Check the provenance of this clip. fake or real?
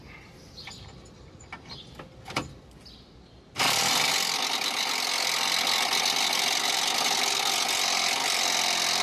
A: real